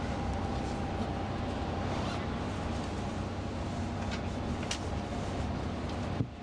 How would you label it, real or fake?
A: real